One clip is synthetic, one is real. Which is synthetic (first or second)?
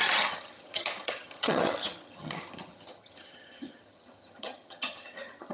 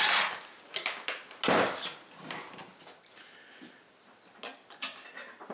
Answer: first